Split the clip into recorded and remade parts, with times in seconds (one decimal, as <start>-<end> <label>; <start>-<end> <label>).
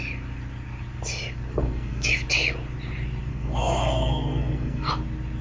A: 0.0-1.5 recorded; 1.5-2.1 remade; 2.1-3.3 recorded; 3.3-4.9 remade; 4.9-5.4 recorded